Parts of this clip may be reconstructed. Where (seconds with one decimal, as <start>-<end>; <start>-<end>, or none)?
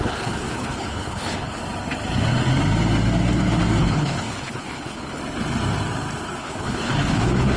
0.0-1.6; 3.8-5.2; 6.4-7.6